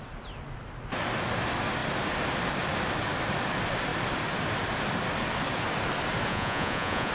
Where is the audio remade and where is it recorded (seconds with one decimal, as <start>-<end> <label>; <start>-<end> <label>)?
0.0-6.3 recorded; 6.3-7.1 remade